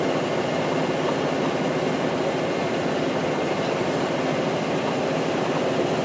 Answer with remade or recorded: recorded